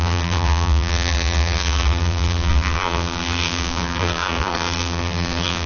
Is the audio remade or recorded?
remade